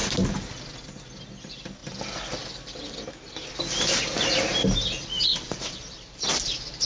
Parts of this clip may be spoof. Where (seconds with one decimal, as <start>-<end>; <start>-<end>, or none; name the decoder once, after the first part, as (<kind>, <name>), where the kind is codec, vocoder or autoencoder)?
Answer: 1.8-3.0 (vocoder, BigVGAN v2); 5.3-6.8